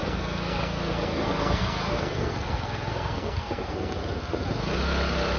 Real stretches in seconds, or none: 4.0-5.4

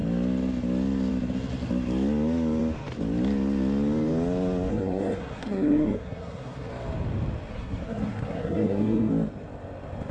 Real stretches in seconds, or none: 0.0-4.7; 6.7-7.5; 9.1-10.1

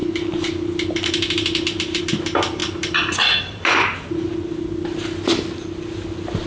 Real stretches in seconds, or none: 0.0-6.5

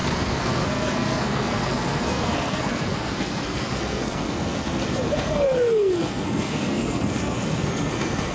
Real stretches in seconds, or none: none

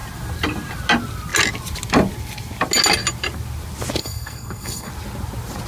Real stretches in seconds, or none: 0.0-4.0; 4.9-5.7

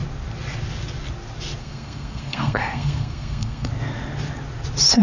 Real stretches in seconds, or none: 0.0-1.6; 3.7-5.0

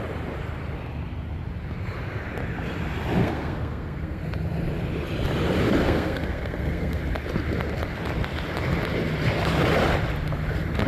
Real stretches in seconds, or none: 0.0-3.2; 4.2-5.8; 7.0-10.9

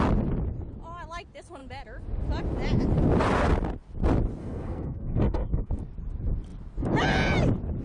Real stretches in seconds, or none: 0.0-4.4; 5.9-7.8